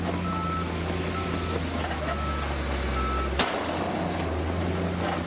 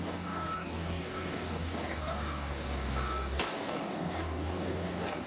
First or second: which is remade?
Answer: second